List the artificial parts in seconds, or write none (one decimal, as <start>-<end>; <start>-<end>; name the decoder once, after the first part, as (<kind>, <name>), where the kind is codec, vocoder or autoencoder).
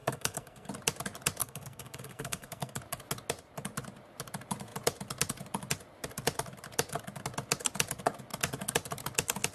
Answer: 0.0-0.7 (codec, SNAC); 1.4-2.8